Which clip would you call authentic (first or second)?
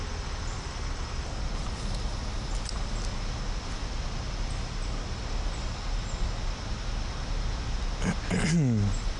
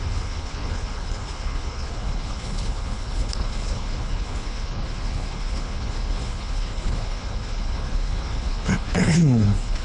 first